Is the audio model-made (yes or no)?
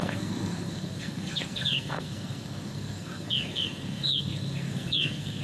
yes